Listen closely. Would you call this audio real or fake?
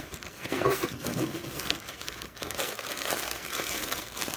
fake